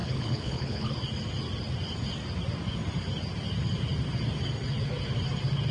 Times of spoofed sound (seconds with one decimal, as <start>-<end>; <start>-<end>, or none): 0.0-0.9